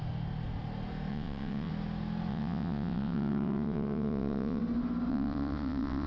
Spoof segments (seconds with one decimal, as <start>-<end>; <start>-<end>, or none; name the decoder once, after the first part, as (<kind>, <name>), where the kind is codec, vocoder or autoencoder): 1.1-1.7 (vocoder, WaveNeXt); 2.3-4.6; 5.1-6.1